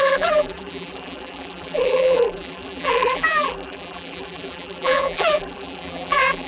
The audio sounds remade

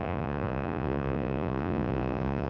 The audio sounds remade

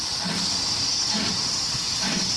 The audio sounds recorded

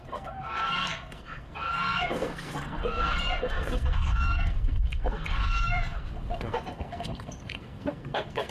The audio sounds remade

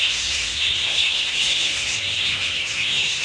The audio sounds remade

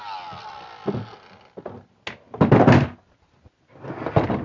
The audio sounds recorded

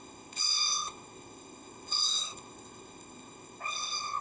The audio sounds remade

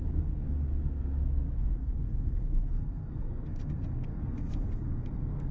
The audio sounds remade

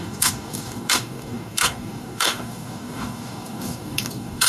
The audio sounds remade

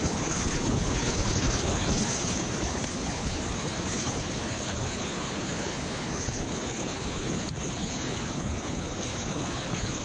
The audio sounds remade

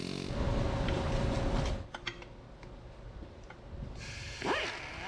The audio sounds recorded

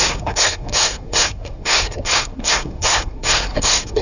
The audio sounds remade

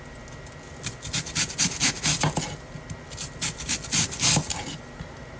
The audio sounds recorded